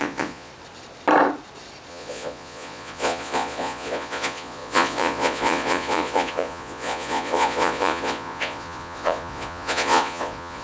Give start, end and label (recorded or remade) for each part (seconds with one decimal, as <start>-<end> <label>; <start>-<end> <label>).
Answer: 0.0-0.5 remade; 0.5-1.9 recorded; 1.9-10.6 remade